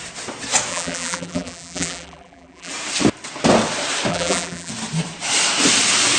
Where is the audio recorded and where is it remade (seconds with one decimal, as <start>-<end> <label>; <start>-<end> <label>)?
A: 0.0-0.7 recorded; 0.7-2.7 remade; 2.7-4.1 recorded; 4.1-4.7 remade; 4.7-6.2 recorded